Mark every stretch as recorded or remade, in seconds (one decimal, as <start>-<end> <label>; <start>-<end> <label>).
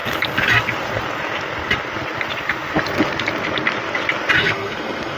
0.0-4.4 recorded; 4.4-5.2 remade